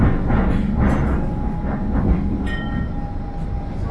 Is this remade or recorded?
recorded